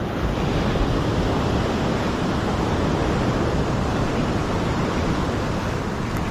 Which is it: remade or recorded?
recorded